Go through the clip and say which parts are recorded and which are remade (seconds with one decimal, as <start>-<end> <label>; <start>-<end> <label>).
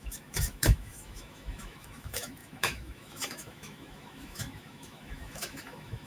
0.0-6.1 remade